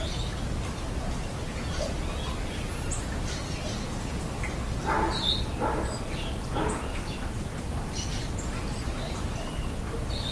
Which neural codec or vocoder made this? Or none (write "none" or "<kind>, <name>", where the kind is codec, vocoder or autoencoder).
none